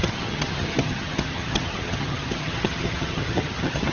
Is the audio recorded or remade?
remade